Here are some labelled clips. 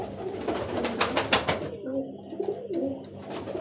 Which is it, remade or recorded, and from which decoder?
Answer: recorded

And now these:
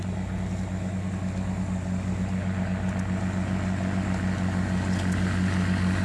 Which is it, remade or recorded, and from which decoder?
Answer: recorded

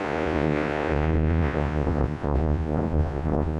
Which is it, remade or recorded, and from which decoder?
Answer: remade, vocoder, Vocos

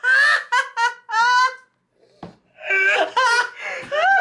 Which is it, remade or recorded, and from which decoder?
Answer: recorded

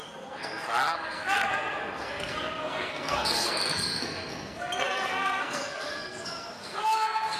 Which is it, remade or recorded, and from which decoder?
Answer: remade, codec, SNAC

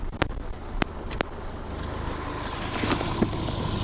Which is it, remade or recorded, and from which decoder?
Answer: recorded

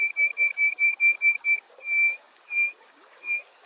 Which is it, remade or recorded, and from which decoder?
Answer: remade, codec, DAC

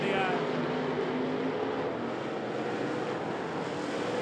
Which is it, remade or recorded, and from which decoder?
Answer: recorded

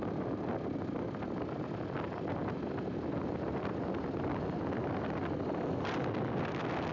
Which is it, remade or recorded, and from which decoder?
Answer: recorded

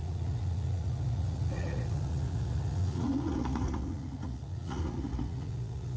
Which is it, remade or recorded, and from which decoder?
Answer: remade, vocoder, Vocos